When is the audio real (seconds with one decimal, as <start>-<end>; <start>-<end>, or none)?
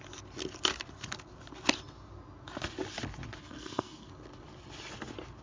0.0-3.4; 4.1-5.4